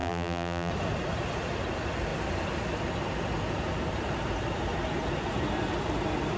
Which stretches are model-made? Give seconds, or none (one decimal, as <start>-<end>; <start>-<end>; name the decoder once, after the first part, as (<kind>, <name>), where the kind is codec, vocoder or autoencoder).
0.0-0.7 (vocoder, BigVGAN v2)